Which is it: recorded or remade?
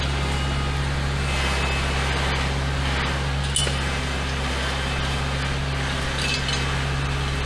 recorded